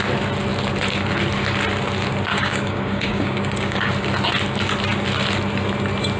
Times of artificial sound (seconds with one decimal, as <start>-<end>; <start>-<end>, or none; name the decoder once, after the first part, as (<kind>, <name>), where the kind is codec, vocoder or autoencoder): 2.3-3.9 (codec, DAC)